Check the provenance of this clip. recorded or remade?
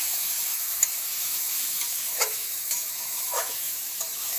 remade